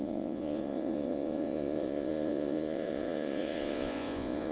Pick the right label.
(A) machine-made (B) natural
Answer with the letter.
A